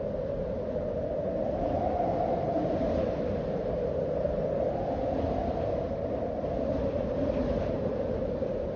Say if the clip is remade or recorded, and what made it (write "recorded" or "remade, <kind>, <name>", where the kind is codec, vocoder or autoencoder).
recorded